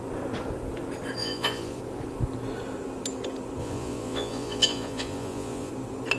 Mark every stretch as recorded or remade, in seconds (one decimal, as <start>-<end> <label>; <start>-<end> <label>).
0.0-1.2 recorded; 1.2-1.8 remade; 1.8-3.6 recorded; 3.6-5.7 remade; 5.7-6.2 recorded